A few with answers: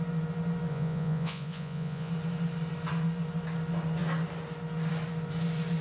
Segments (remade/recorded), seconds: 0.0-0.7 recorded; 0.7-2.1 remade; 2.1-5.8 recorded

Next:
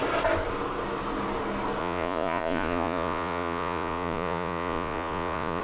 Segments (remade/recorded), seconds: 0.0-1.8 recorded; 1.8-5.6 remade

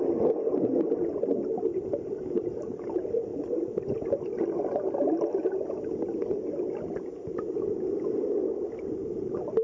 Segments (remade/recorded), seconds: 0.0-9.6 recorded

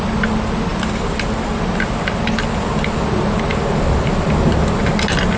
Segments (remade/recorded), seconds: 0.0-5.4 recorded

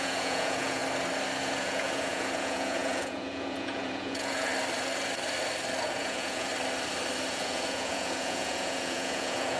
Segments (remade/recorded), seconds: 0.0-0.8 remade; 0.8-1.4 recorded; 1.4-4.5 remade; 4.5-5.8 recorded; 5.8-6.5 remade; 6.5-7.3 recorded; 7.3-9.6 remade